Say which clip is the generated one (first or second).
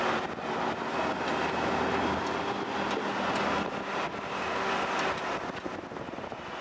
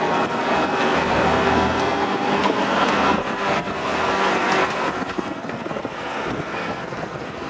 second